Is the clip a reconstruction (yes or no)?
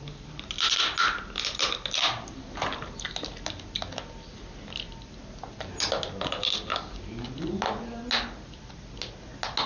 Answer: no